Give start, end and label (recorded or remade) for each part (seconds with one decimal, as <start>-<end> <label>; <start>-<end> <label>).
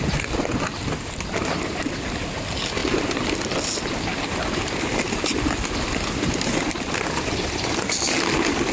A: 0.0-8.7 recorded